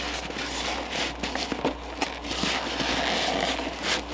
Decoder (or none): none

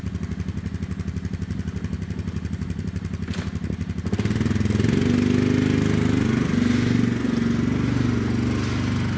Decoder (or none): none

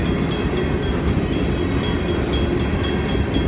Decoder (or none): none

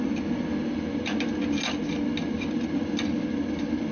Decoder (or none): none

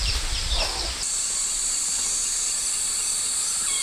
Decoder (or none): vocoder, BigVGAN v2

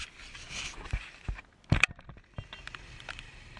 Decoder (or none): none